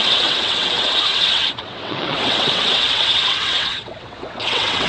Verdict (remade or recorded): remade